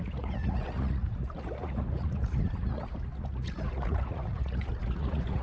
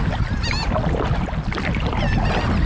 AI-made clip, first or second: first